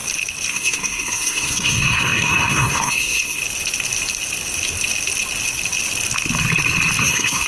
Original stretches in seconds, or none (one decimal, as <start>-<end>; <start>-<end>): 0.0-0.5; 3.4-7.0